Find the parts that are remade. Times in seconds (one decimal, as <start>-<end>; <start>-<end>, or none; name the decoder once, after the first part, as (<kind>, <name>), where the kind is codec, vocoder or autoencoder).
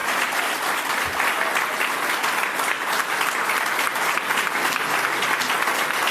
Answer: 0.0-1.8 (vocoder, BigVGAN v2)